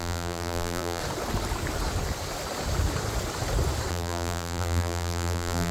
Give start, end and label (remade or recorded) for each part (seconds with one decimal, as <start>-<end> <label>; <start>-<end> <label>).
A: 0.0-1.0 remade; 1.0-3.9 recorded; 3.9-5.7 remade